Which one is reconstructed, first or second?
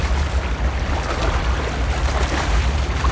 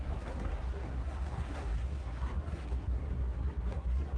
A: second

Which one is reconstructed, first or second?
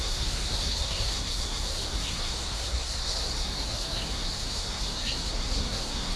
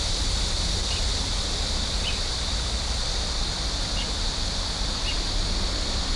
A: first